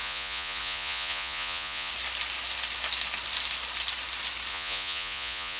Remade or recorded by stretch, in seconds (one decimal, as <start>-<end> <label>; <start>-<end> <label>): 0.0-1.9 remade; 1.9-4.5 recorded; 4.5-5.6 remade